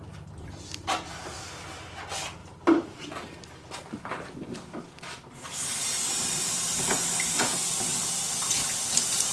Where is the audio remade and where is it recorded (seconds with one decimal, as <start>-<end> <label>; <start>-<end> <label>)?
0.0-2.4 recorded; 2.4-3.0 remade; 3.0-9.3 recorded